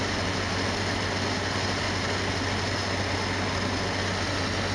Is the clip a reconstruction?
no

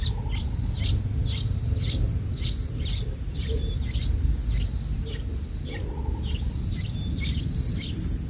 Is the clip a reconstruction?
no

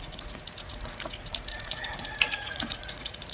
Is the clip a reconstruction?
yes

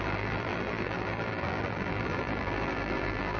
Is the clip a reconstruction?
yes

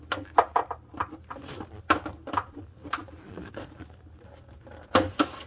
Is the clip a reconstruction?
no